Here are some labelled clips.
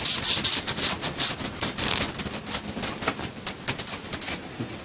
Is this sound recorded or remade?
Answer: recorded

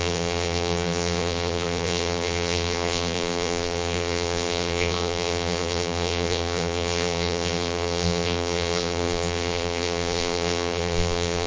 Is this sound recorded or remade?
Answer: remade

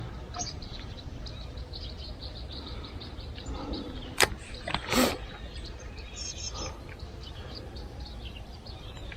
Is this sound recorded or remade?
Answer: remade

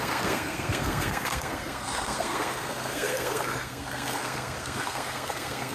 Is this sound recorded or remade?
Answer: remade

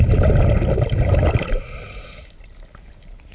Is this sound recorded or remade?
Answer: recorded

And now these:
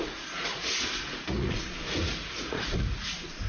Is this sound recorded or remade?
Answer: remade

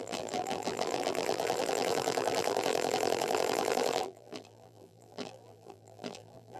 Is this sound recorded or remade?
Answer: remade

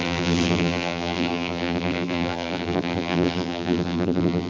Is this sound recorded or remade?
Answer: remade